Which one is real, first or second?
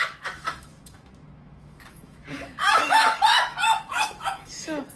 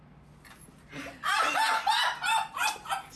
second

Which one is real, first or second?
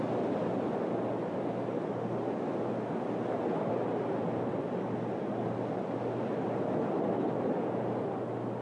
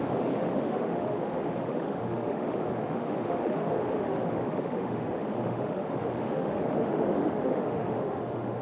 first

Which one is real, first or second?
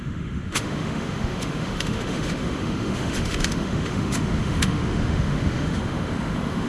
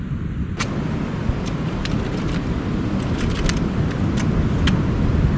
second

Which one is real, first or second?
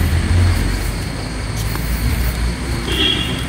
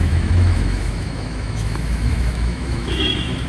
first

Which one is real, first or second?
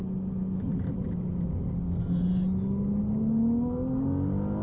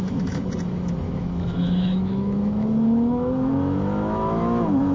first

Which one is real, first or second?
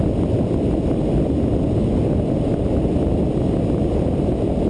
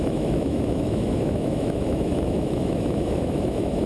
first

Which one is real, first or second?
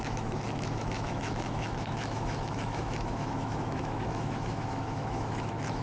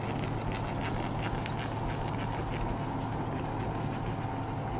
second